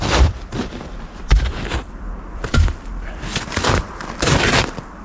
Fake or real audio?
fake